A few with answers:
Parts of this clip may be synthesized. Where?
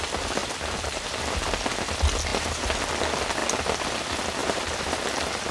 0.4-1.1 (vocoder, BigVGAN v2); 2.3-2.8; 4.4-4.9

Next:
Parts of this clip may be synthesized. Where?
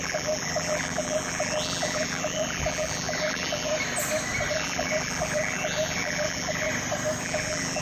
0.0-3.7 (vocoder, BigVGAN v2); 4.5-6.7; 7.2-7.8